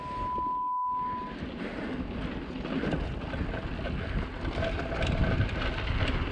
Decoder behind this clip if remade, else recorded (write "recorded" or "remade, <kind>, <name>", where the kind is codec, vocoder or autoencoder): recorded